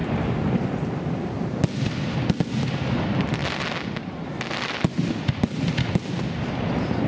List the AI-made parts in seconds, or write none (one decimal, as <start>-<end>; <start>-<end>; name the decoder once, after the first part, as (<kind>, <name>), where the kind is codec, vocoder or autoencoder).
none